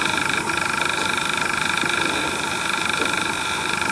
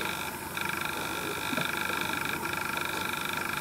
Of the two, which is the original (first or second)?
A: second